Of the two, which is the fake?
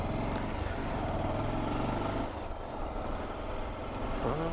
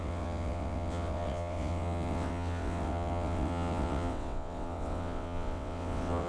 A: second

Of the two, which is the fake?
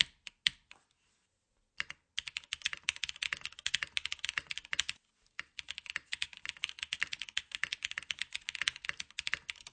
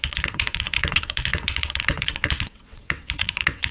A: second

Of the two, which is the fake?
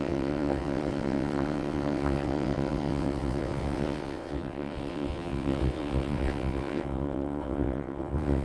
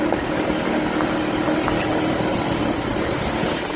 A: first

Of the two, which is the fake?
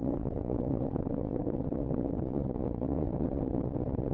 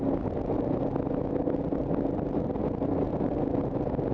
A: first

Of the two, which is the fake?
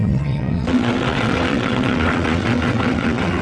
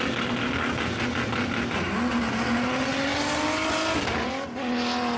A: first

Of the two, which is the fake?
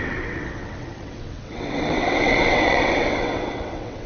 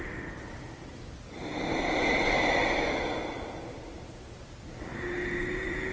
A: first